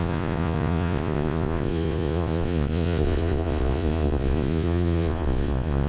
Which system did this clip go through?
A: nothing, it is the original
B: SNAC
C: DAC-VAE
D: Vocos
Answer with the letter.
D